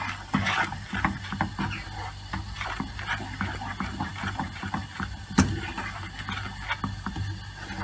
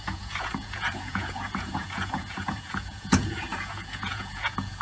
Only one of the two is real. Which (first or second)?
first